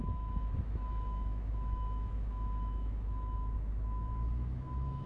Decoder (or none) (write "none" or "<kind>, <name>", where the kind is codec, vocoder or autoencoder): autoencoder, DAC-VAE